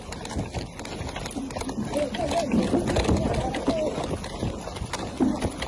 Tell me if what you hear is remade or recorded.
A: recorded